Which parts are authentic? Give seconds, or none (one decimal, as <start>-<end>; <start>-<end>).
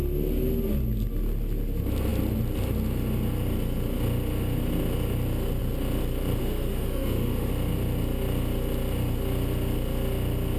0.0-6.4; 7.5-10.6